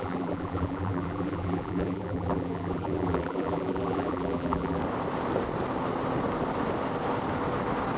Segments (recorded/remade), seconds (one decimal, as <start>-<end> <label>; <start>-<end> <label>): 0.0-4.8 remade; 4.8-8.0 recorded